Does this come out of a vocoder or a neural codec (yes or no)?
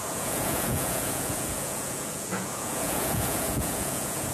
yes